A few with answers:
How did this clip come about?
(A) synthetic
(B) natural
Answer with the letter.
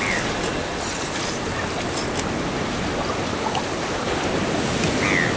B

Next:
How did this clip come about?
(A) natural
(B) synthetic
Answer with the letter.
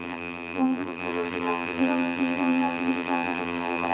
B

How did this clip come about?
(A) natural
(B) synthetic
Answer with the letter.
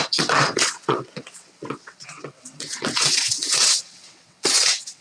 B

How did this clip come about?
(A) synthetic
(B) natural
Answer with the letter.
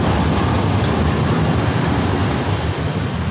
B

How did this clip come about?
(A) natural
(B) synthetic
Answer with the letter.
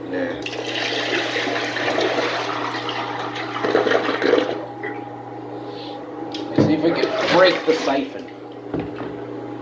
A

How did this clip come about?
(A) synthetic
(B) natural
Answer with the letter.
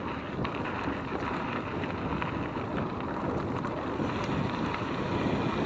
B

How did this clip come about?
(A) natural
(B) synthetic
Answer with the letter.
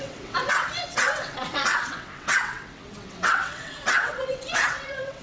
B